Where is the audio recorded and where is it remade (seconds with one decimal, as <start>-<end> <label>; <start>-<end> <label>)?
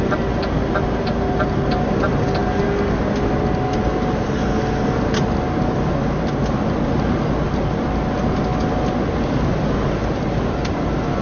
0.0-11.2 recorded